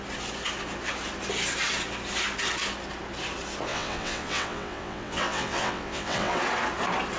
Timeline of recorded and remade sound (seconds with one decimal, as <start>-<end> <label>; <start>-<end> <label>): 0.0-3.7 recorded; 3.7-6.4 remade; 6.4-7.2 recorded